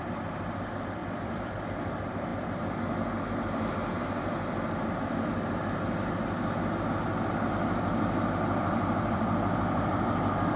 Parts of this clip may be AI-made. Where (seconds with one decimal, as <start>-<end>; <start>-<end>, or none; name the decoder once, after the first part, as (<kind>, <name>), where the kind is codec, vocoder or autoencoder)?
0.0-2.3 (vocoder, BigVGAN v2); 7.3-10.6